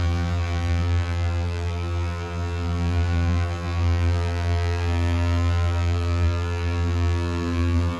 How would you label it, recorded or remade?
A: remade